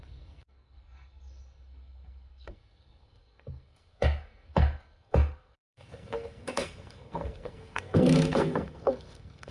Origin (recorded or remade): remade